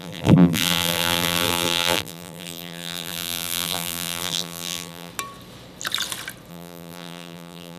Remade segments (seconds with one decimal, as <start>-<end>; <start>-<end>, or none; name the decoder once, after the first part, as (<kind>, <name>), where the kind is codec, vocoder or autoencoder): 0.0-5.1 (vocoder, BigVGAN v2); 6.5-7.8